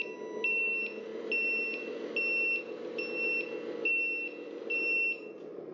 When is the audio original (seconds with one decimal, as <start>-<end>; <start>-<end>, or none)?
0.0-5.7